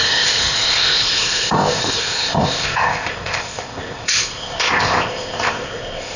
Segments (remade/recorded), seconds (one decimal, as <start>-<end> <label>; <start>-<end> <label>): 0.0-6.2 remade